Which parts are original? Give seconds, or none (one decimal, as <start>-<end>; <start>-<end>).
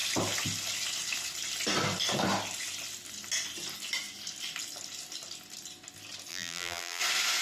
0.0-6.3; 7.0-7.4